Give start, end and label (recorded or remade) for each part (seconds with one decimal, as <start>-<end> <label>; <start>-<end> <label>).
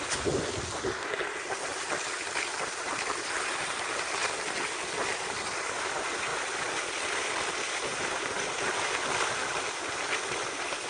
0.0-4.2 recorded; 4.2-5.8 remade; 5.8-6.3 recorded; 6.3-7.4 remade; 7.4-10.9 recorded